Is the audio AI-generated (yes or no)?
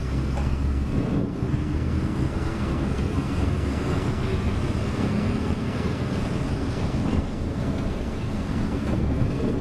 yes